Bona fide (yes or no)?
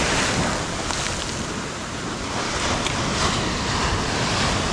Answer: yes